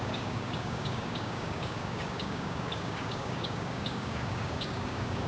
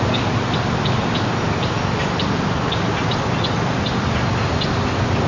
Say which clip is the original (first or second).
second